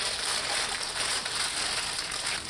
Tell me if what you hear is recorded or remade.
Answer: recorded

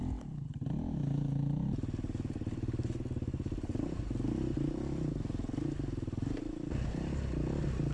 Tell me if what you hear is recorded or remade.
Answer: recorded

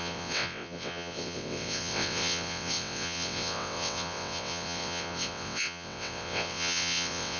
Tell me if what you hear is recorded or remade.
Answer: remade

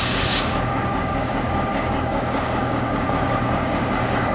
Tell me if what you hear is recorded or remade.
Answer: remade